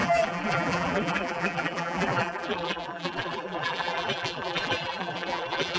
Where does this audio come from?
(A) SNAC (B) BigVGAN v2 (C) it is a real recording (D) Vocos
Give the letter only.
B